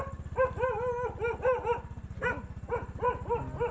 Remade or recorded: recorded